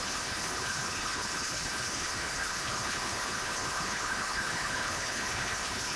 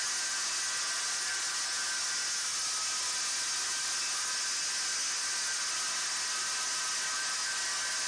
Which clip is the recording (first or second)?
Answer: second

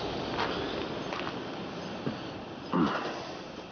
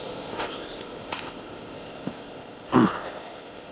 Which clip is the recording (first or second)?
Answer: first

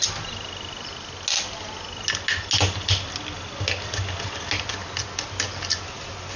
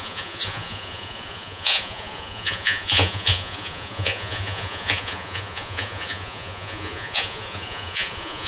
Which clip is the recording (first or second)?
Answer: first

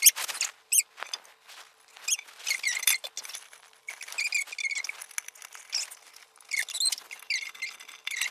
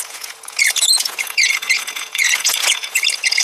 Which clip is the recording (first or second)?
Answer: first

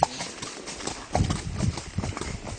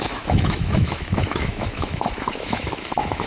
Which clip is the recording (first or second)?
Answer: first